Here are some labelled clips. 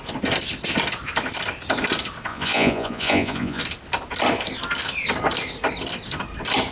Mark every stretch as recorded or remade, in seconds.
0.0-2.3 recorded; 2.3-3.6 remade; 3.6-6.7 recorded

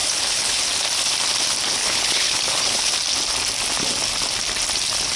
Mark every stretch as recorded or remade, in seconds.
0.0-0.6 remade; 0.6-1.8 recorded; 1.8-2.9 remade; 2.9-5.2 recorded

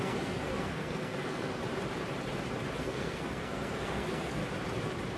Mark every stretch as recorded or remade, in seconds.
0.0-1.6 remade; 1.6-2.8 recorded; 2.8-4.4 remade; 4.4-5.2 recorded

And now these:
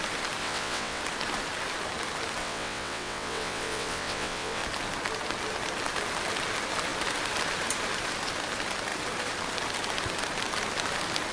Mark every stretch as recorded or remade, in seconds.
0.0-0.4 recorded; 0.4-1.0 remade; 1.0-2.4 recorded; 2.4-4.6 remade; 4.6-11.3 recorded